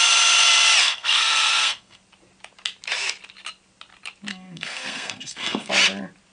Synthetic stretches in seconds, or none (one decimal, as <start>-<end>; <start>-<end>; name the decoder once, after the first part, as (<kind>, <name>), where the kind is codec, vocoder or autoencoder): 0.8-2.0 (codec, SNAC); 4.3-5.7